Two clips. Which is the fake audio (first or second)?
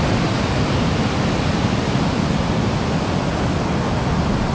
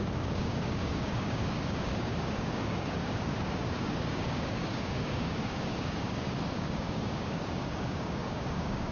second